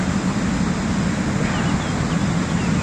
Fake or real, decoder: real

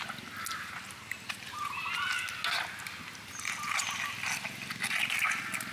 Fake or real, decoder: real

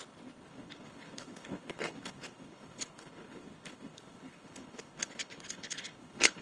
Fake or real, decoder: fake, codec, HILCodec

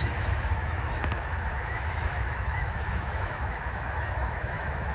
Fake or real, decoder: fake, autoencoder, DAC-VAE